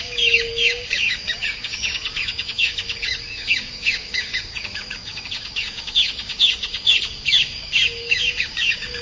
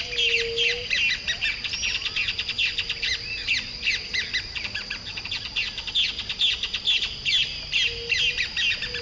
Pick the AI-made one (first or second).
first